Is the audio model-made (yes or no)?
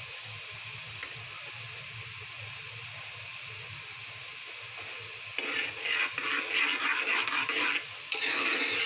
no